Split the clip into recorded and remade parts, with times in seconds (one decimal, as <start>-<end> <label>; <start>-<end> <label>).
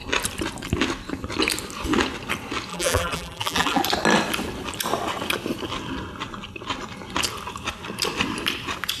0.0-2.7 recorded; 2.7-3.8 remade; 3.8-9.0 recorded